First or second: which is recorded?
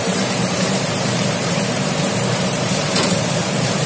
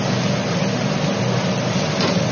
second